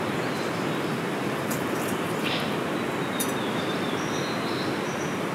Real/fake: real